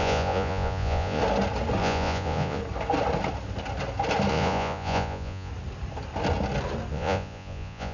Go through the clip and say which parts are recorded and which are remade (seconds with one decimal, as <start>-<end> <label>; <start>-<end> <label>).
0.0-1.2 remade; 1.2-1.8 recorded; 1.8-2.6 remade; 2.6-4.3 recorded; 4.3-5.5 remade; 5.5-6.9 recorded; 6.9-7.9 remade